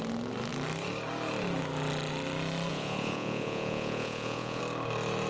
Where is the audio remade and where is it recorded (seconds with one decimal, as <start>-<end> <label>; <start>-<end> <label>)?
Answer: 0.0-2.7 recorded; 2.7-4.6 remade; 4.6-5.3 recorded

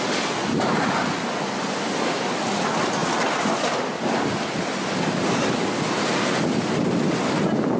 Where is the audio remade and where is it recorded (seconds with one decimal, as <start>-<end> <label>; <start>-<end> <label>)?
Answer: 0.0-7.8 recorded

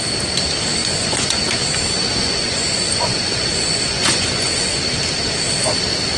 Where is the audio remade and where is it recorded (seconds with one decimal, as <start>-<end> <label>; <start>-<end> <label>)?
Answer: 0.0-0.8 recorded; 0.8-1.7 remade; 1.7-2.2 recorded; 2.2-4.8 remade; 4.8-6.2 recorded